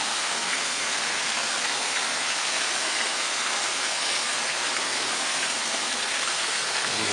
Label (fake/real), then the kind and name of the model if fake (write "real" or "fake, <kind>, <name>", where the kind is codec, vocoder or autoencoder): fake, codec, SNAC